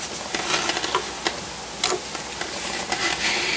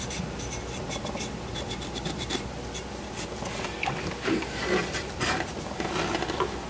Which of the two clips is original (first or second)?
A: first